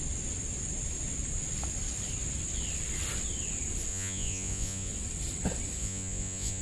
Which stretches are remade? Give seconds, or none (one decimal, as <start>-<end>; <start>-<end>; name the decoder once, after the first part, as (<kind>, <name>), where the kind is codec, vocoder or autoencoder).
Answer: 3.9-4.9 (vocoder, Vocos); 5.8-6.6